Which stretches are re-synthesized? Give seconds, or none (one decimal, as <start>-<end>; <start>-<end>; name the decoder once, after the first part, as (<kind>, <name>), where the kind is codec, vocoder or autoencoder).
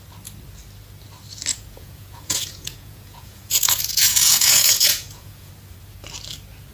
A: 1.5-5.5 (vocoder, Vocos)